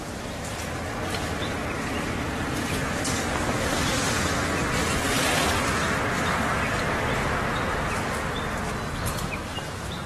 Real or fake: real